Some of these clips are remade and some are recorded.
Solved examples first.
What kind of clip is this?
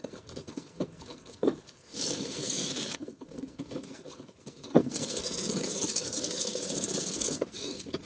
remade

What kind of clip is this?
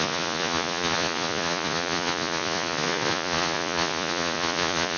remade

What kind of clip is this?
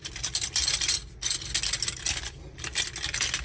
recorded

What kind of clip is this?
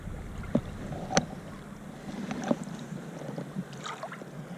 recorded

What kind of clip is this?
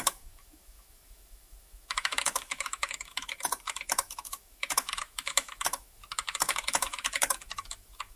remade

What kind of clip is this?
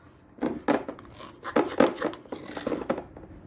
recorded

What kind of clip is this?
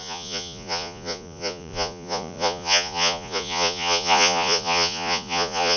remade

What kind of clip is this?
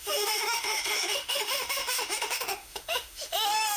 remade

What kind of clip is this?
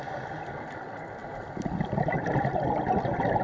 recorded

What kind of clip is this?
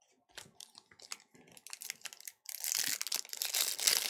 recorded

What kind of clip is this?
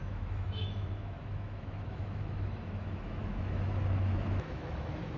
remade